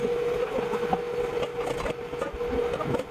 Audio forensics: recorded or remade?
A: recorded